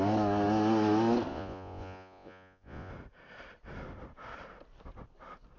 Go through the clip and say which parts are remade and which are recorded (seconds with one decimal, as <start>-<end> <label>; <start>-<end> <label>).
0.0-1.3 recorded; 1.3-2.9 remade; 2.9-5.6 recorded